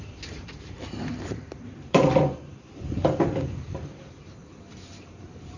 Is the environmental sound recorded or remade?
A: remade